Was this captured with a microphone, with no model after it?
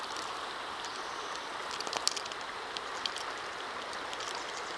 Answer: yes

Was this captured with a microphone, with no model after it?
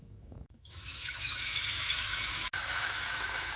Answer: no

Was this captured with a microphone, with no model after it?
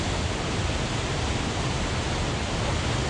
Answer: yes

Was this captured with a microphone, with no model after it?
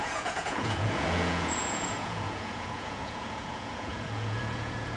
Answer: no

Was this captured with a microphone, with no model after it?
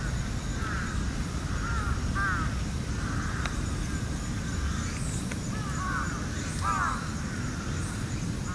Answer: yes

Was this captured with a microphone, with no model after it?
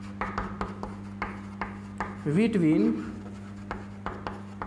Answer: yes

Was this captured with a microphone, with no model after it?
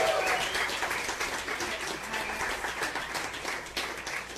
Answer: yes